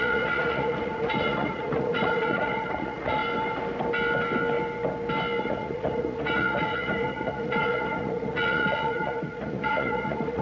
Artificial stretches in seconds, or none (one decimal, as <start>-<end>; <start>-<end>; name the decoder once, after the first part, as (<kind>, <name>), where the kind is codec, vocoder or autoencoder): 0.0-3.2 (vocoder, Vocos); 5.4-10.4